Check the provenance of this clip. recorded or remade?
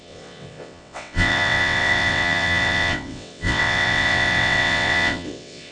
remade